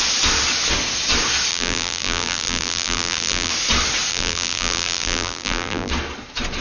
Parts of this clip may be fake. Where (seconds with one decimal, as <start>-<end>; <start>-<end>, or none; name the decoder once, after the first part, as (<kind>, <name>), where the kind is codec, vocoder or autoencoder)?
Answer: 1.5-3.5 (vocoder, BigVGAN v2); 4.1-5.9